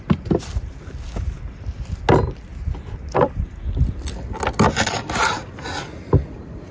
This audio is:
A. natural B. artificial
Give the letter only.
A